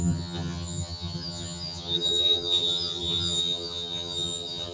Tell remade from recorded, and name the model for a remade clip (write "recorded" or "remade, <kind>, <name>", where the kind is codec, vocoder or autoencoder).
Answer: remade, vocoder, HiFi-GAN